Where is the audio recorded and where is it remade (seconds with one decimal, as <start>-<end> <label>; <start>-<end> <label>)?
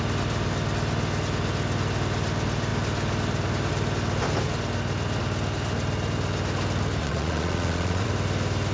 0.0-7.0 recorded; 7.0-8.1 remade; 8.1-8.7 recorded